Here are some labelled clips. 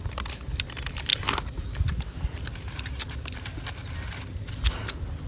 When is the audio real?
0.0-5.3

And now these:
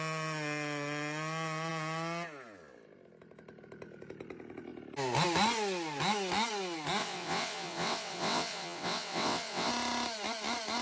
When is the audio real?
0.0-7.0; 9.7-10.8

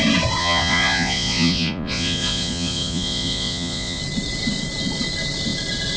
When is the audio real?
0.0-0.4; 4.0-6.0

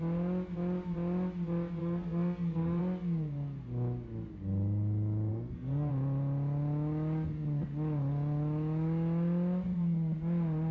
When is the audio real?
0.0-1.8; 2.8-5.3; 5.9-10.7

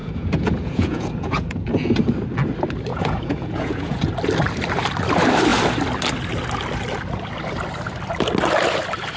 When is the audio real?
1.9-2.9; 4.1-9.2

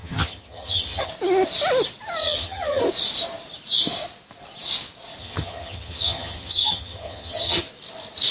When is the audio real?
1.1-2.2; 2.8-5.2; 7.6-8.3

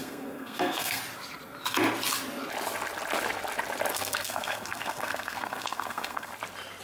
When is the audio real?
1.0-3.9; 6.3-6.8

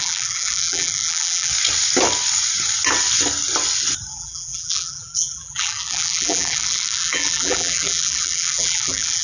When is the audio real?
1.5-4.1